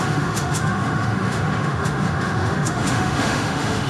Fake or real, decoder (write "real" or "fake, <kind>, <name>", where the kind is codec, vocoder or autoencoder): fake, autoencoder, DAC-VAE